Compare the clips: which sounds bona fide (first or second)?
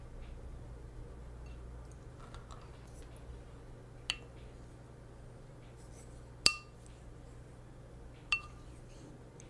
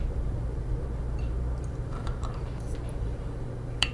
first